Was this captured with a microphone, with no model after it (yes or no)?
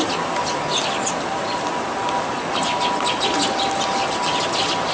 yes